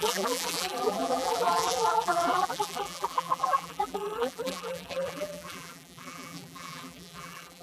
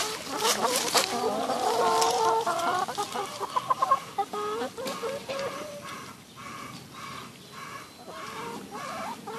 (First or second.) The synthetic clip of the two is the first